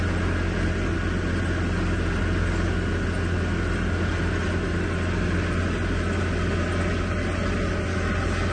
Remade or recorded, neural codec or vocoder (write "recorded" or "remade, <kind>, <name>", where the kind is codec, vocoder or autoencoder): recorded